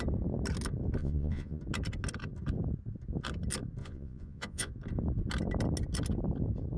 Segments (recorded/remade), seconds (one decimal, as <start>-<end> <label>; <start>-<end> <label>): 0.0-1.0 recorded; 1.0-1.6 remade; 1.6-3.8 recorded; 3.8-4.7 remade; 4.7-6.8 recorded